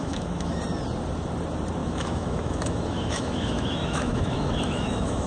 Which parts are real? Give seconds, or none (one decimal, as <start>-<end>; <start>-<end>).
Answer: 0.6-1.8